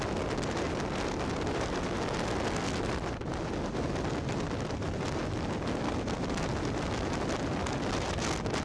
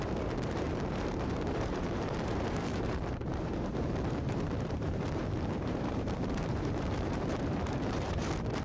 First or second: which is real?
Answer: first